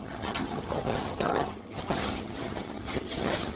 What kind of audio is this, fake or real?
fake